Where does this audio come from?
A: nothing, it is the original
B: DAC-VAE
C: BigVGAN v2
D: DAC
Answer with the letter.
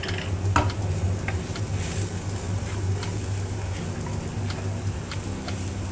A